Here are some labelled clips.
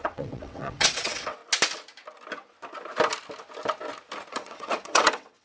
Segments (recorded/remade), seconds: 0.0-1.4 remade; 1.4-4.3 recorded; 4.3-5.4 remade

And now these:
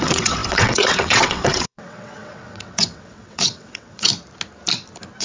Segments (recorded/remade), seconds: 0.0-4.1 remade; 4.1-5.2 recorded